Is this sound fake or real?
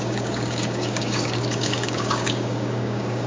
fake